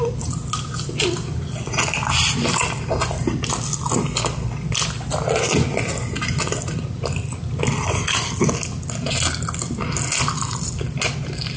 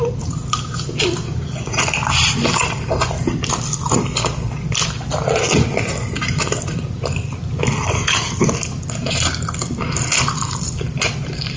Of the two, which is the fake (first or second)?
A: second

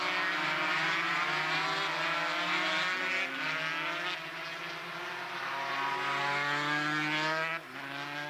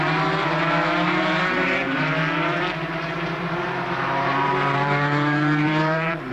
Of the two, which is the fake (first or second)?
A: second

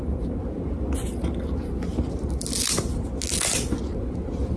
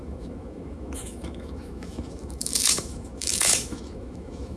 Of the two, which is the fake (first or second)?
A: second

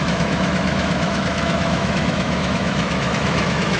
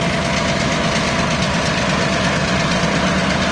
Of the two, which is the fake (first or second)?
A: first